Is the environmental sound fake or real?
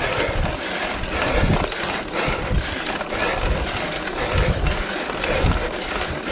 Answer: real